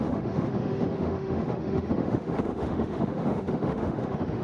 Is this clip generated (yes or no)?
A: yes